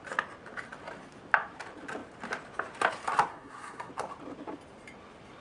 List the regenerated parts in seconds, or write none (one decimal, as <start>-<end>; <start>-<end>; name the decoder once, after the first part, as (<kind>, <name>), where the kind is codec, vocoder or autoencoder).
3.3-3.9 (codec, SNAC)